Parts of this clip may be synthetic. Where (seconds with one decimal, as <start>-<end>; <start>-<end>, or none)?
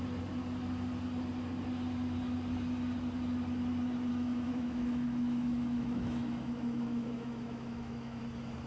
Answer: 4.1-8.2